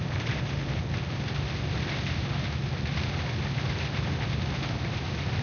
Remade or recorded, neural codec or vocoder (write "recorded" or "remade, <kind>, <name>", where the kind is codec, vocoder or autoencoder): recorded